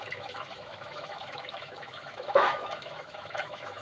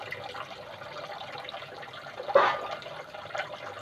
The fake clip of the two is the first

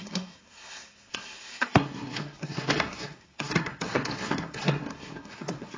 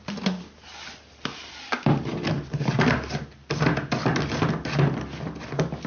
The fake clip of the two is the first